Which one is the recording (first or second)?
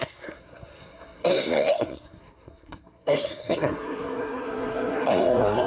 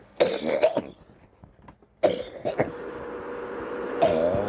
second